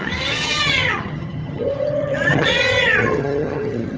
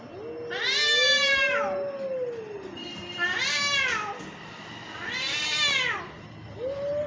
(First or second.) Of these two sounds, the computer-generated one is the first